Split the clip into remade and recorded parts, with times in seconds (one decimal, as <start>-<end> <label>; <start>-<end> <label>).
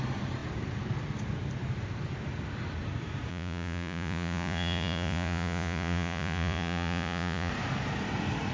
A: 0.0-3.3 recorded; 3.3-7.5 remade; 7.5-8.5 recorded